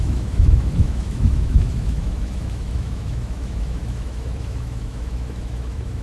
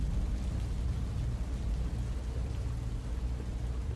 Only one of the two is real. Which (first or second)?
second